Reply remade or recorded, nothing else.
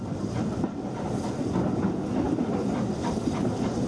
recorded